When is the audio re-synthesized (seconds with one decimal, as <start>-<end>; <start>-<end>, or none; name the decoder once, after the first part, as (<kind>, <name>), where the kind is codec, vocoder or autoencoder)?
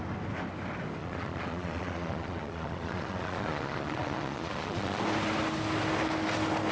1.0-5.0 (vocoder, Vocos)